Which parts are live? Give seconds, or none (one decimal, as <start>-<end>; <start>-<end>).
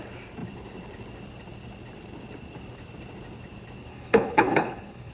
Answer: 0.0-3.9